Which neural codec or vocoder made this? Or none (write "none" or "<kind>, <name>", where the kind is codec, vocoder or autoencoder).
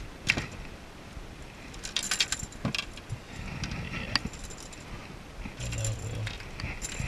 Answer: none